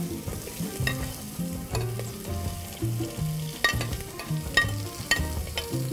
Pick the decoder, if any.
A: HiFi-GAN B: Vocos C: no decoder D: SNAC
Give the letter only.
C